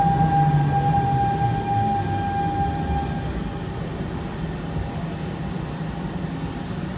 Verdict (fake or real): real